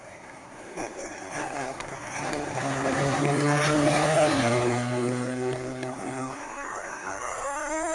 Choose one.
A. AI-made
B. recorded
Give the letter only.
A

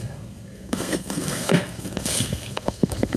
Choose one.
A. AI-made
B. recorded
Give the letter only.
A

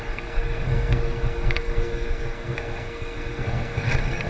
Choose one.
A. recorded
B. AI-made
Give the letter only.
B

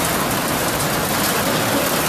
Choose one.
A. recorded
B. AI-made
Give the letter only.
A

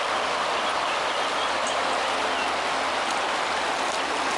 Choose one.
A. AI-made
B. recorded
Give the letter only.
B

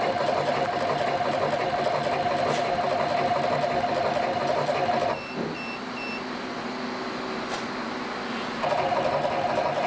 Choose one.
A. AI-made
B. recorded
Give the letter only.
B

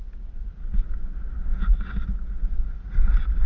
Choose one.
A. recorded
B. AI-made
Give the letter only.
A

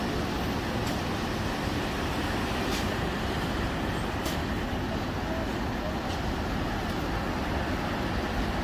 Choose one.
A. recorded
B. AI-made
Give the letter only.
A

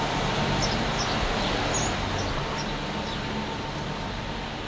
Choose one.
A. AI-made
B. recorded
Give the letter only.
B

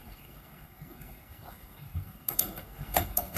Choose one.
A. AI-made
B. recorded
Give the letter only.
A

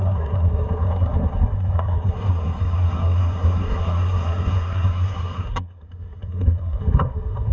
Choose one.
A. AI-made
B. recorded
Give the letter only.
A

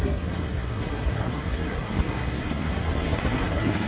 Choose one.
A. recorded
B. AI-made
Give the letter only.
B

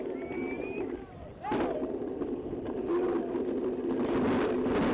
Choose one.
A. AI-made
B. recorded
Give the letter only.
B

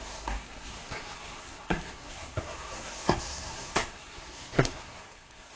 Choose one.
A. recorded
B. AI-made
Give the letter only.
B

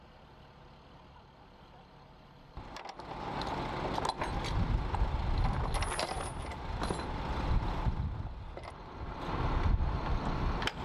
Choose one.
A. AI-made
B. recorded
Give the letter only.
B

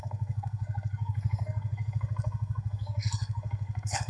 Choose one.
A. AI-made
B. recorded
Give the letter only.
A